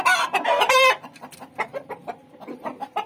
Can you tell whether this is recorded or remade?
remade